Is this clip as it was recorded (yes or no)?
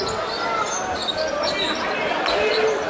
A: yes